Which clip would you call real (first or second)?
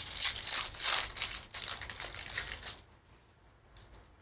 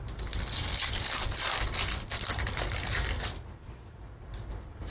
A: first